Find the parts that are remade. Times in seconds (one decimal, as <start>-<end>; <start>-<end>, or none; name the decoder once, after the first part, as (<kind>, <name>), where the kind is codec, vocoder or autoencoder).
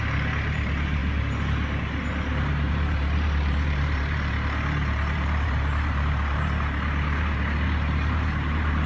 0.0-1.0 (vocoder, BigVGAN v2); 2.7-8.9